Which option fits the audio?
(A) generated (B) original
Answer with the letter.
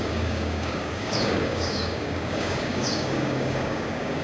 A